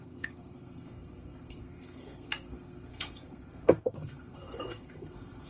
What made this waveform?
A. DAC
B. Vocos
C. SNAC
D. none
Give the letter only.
C